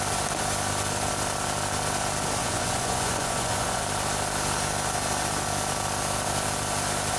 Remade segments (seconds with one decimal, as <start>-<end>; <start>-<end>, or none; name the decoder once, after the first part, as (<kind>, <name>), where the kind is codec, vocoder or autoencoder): 2.4-3.8 (vocoder, Vocos)